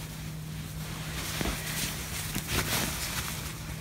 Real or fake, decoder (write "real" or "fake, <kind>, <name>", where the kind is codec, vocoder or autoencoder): real